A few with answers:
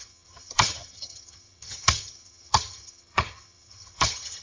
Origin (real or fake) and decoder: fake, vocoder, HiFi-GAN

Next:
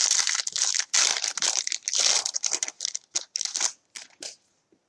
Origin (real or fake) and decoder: real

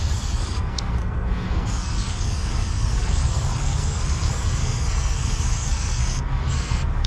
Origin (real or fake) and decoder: fake, codec, SNAC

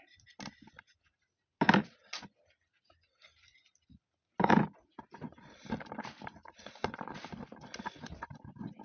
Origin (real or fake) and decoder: real